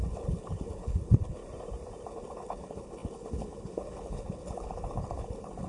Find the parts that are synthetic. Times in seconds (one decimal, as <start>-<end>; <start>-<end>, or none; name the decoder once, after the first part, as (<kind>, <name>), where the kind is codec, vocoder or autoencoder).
0.0-1.4 (codec, HILCodec); 2.1-5.7